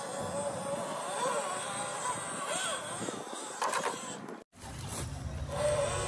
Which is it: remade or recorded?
recorded